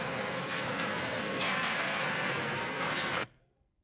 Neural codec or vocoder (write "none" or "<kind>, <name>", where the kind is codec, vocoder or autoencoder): codec, SNAC